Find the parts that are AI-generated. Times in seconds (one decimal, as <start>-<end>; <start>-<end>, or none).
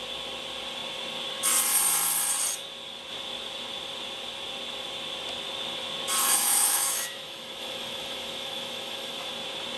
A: 6.2-9.3